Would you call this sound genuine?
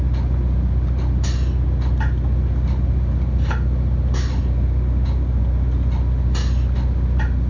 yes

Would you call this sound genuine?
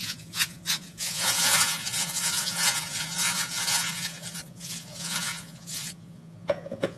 no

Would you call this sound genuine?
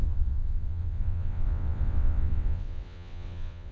no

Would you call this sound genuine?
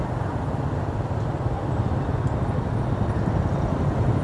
yes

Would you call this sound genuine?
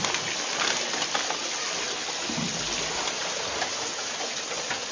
yes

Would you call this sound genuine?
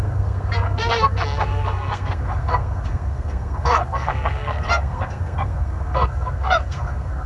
no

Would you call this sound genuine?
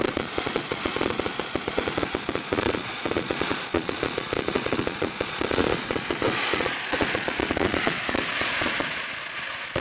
no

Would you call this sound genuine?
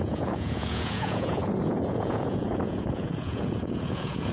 no